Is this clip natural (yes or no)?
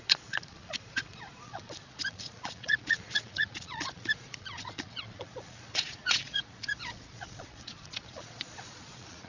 no